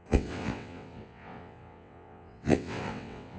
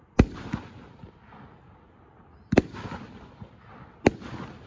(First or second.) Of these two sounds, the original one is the second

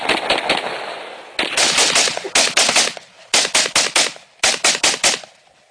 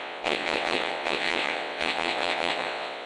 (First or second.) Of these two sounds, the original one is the first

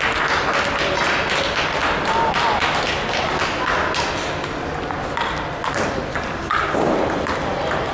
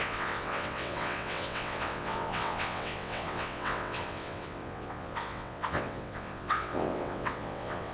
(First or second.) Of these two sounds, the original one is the first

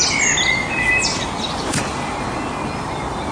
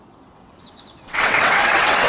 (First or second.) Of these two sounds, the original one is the first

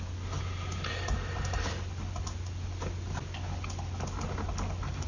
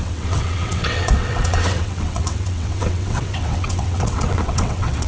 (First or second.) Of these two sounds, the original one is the first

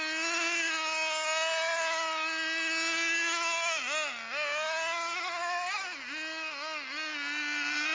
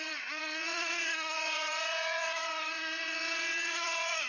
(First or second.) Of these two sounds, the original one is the first